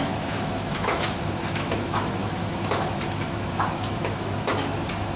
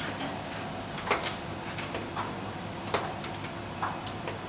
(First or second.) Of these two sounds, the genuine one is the second